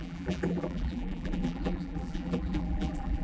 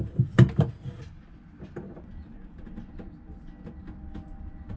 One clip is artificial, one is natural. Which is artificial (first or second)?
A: first